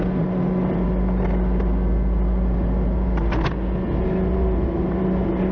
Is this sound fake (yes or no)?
no